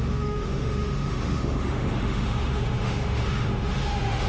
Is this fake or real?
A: fake